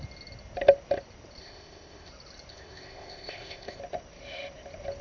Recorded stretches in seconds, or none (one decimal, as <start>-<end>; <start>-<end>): 0.0-1.4; 2.1-2.5; 3.8-5.0